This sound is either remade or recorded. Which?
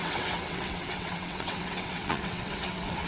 remade